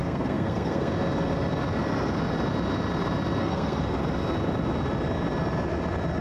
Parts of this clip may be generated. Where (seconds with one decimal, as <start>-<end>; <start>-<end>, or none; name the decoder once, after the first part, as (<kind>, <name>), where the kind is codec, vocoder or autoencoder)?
0.0-0.9 (codec, SNAC); 3.4-4.0